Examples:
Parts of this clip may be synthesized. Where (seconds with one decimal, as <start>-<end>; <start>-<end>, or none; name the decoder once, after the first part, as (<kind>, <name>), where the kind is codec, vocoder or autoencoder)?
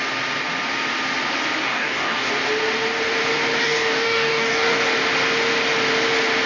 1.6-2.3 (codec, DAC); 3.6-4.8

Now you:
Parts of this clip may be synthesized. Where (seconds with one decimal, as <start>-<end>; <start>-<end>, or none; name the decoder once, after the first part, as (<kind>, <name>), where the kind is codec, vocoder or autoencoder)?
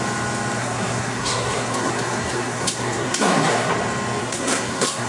0.6-3.7 (codec, SNAC); 4.2-5.1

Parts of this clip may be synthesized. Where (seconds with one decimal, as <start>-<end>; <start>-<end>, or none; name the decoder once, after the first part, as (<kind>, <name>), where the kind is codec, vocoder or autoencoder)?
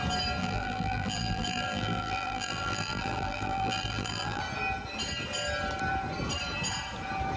0.4-4.4 (vocoder, BigVGAN v2)